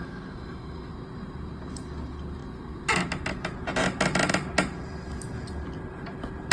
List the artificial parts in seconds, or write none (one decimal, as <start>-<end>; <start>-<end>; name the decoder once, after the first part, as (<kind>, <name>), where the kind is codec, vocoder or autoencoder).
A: 0.0-0.9 (autoencoder, DAC-VAE)